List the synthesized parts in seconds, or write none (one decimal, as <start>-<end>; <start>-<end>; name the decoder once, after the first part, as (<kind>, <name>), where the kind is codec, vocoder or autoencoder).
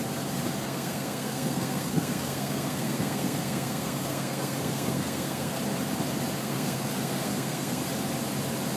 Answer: 0.6-5.6 (codec, SNAC); 6.4-7.8